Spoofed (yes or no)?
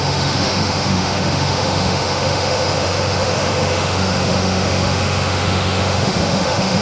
yes